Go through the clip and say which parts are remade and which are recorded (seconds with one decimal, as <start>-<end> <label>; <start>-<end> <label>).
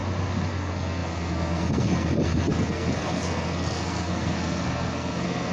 0.0-0.5 recorded; 0.5-5.5 remade